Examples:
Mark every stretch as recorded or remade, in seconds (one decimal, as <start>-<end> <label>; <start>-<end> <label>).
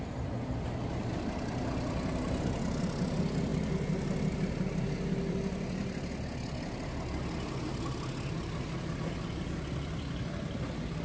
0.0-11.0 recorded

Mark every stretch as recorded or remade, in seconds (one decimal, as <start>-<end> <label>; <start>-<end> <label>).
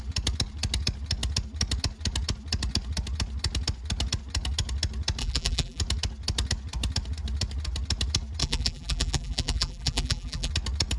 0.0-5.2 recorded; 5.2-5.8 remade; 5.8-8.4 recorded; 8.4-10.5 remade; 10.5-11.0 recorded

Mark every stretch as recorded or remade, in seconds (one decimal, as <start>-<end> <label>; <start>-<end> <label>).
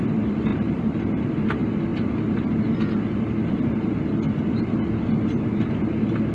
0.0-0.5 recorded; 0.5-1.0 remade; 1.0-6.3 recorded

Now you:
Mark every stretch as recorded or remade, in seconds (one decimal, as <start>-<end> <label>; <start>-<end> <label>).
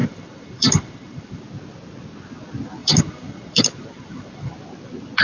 0.0-1.4 remade; 1.4-2.8 recorded; 2.8-4.5 remade; 4.5-5.2 recorded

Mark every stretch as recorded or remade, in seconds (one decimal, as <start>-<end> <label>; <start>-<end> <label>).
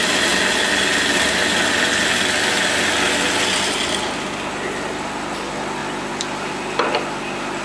0.0-7.6 recorded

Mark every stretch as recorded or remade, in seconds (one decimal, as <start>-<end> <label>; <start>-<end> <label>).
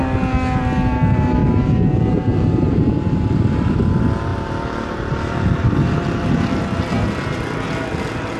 0.0-1.4 recorded; 1.4-3.8 remade; 3.8-8.4 recorded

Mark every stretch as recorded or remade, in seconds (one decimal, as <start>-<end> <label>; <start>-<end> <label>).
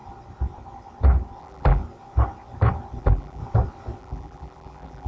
0.0-1.4 recorded; 1.4-1.8 remade; 1.8-3.0 recorded; 3.0-3.4 remade; 3.4-4.0 recorded; 4.0-5.1 remade